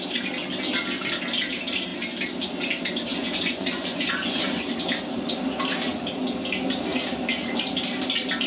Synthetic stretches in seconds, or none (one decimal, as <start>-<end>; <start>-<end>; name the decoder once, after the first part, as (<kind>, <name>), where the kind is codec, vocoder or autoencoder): 3.1-4.7 (vocoder, Vocos)